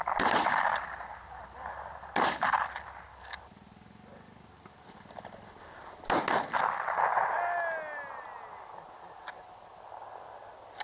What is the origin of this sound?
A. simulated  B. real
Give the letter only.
B